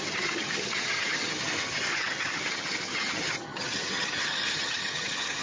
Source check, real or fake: fake